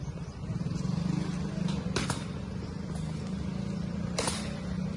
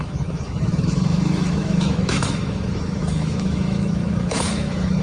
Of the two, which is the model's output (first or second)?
second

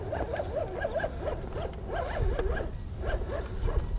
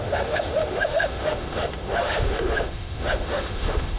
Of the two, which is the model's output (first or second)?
second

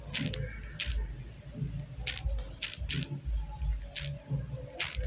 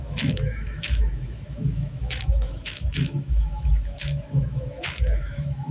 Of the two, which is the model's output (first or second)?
second